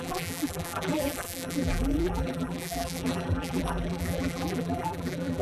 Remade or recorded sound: remade